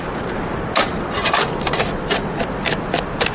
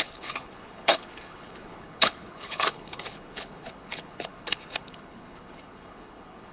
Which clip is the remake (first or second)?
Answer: second